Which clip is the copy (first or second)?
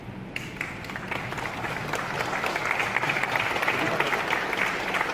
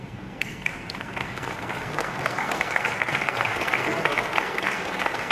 second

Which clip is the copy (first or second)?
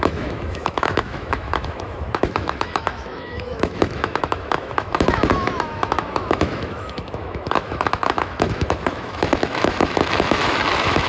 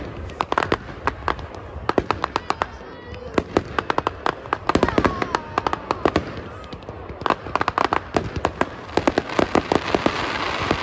first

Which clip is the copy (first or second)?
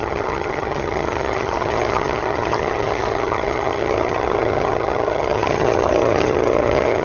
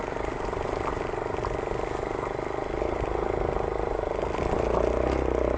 first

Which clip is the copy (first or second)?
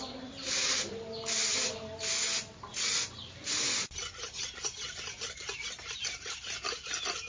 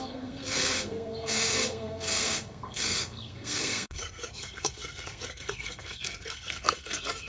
second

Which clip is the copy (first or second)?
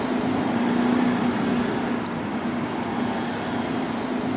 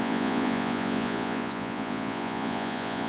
second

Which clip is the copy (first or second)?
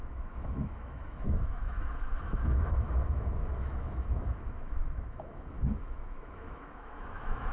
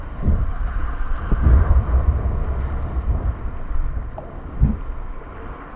first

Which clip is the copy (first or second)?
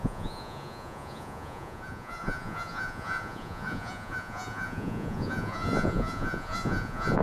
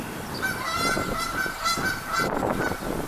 first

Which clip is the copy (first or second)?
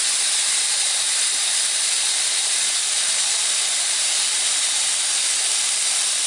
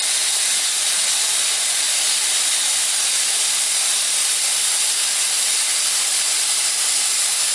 first